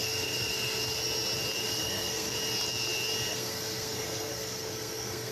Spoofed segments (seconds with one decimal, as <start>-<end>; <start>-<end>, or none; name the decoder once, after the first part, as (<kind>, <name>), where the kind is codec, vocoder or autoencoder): 0.0-0.8 (codec, SNAC); 1.6-2.3; 3.3-5.3

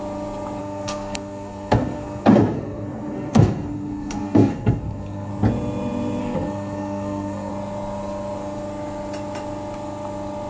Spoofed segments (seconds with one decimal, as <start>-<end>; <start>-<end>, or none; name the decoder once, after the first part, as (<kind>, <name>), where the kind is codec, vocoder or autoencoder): 0.6-5.3 (codec, SNAC); 6.2-7.5

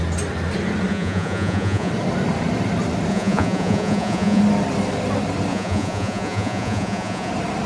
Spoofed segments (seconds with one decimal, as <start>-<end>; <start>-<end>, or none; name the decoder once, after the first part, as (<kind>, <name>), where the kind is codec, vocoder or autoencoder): 0.9-1.9 (vocoder, Vocos); 3.1-4.4; 5.5-7.3

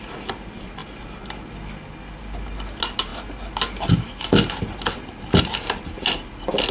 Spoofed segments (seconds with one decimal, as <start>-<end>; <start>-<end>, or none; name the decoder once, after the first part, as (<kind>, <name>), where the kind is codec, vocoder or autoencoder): none

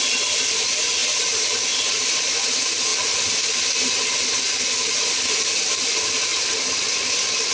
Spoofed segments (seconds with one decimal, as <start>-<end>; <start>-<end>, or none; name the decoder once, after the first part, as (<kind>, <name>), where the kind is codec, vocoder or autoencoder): none